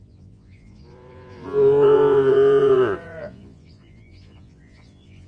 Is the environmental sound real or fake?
fake